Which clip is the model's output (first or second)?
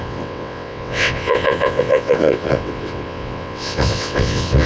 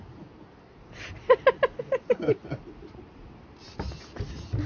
first